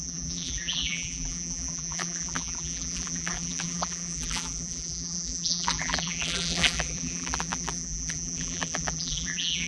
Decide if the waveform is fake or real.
fake